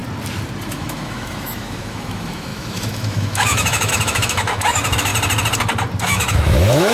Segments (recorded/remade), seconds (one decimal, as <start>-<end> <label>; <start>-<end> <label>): 0.0-0.6 recorded; 0.6-5.1 remade; 5.1-6.0 recorded; 6.0-6.9 remade